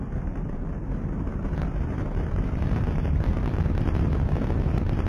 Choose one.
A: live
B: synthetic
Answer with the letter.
B